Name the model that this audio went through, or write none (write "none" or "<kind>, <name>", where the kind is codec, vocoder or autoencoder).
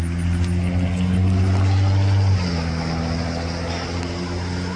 none